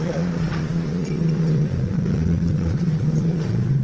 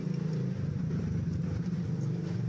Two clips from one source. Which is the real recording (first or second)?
second